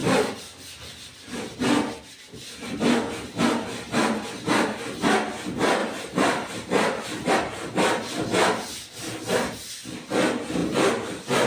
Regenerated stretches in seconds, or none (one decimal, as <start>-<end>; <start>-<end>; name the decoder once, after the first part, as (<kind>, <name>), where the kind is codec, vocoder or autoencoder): 5.8-7.3 (vocoder, BigVGAN v2)